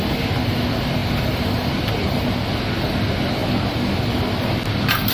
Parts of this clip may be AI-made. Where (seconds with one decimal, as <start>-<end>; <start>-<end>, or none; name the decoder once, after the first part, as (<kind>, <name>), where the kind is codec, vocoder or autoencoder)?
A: none